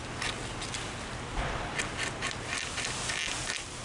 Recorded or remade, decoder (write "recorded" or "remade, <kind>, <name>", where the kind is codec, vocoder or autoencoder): recorded